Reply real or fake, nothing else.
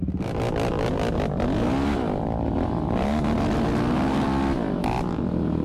real